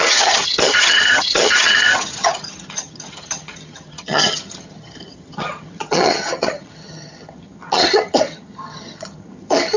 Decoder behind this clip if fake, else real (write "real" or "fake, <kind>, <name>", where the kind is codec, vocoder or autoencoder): fake, vocoder, HiFi-GAN